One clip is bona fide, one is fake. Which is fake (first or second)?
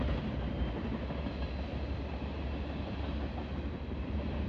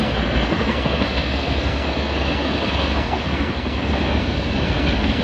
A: second